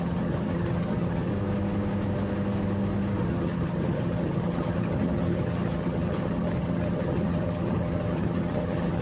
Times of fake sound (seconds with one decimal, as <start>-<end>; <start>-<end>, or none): 0.0-1.3; 3.2-9.0